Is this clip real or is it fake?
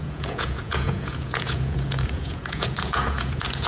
fake